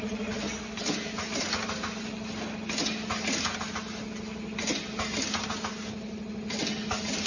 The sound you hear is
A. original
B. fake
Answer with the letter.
A